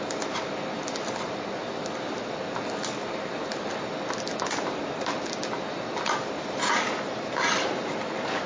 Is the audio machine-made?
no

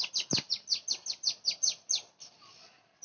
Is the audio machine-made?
no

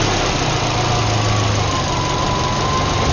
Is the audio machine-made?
no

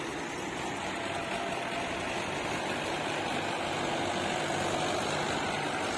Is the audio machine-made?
no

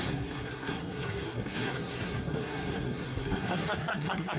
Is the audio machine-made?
yes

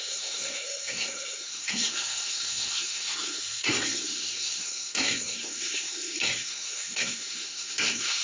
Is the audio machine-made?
yes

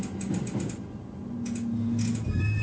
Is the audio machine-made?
no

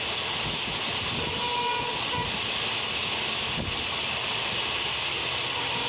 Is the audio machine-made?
no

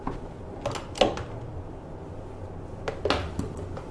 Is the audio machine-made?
no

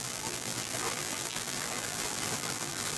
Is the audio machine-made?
yes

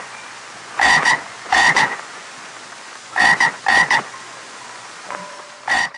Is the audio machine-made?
yes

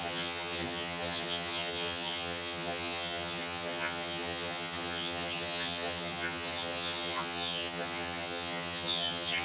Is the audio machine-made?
yes